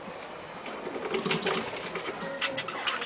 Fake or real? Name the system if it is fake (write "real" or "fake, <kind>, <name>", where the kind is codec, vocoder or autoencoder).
real